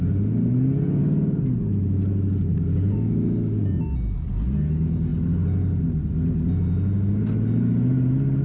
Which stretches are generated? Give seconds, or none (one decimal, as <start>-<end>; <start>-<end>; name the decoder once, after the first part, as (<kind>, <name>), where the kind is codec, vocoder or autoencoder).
2.5-3.6 (codec, DAC)